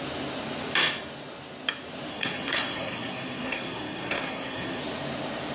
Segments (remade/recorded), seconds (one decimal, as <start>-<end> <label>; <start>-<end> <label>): 0.0-2.1 recorded; 2.1-4.8 remade; 4.8-5.5 recorded